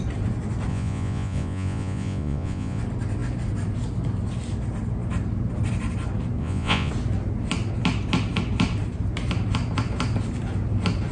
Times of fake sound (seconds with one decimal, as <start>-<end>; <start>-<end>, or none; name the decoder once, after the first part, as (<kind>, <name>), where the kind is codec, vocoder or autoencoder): 0.7-2.8 (vocoder, Vocos); 6.4-6.9